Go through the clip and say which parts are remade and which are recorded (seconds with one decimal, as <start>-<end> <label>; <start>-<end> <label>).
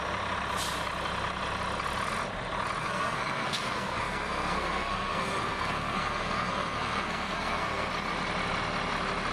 0.0-2.8 recorded; 2.8-7.9 remade; 7.9-9.3 recorded